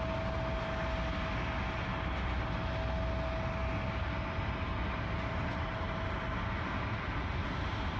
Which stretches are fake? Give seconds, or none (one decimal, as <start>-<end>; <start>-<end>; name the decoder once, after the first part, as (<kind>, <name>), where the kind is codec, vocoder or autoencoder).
none